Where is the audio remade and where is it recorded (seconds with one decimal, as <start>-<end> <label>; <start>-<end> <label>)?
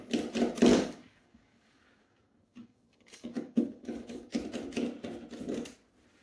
0.0-0.7 recorded; 0.7-4.4 remade; 4.4-6.2 recorded